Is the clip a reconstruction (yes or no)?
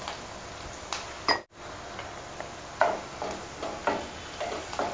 no